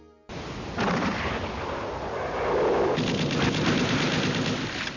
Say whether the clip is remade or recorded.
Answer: recorded